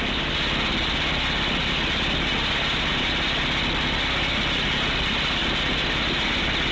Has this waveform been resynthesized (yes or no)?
no